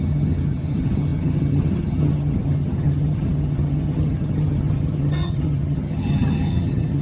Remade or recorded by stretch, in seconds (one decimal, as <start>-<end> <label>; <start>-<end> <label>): 0.0-7.0 remade